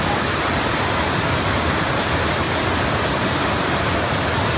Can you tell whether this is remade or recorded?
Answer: recorded